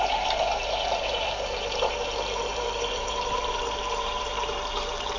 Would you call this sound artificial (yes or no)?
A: yes